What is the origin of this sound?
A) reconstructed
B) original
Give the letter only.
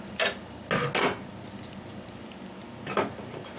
B